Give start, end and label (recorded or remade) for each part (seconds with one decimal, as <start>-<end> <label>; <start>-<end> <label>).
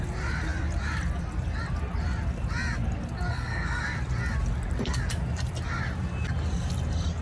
0.0-3.3 recorded; 3.3-3.8 remade; 3.8-7.2 recorded